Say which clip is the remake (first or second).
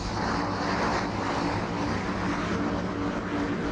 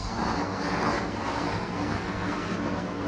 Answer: second